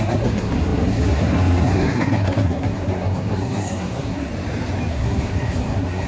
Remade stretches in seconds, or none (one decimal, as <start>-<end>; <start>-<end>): 0.0-4.3; 4.9-6.1